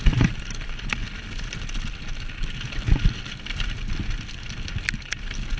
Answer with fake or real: real